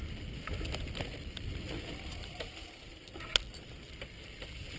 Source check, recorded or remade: recorded